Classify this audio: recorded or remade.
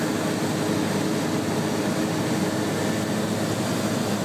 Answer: recorded